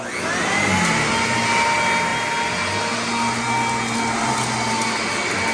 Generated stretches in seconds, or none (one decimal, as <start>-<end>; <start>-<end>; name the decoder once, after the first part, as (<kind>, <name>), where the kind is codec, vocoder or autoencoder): none